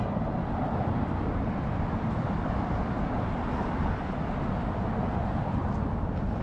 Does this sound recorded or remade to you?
recorded